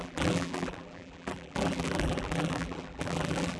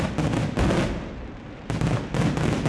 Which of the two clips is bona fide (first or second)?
second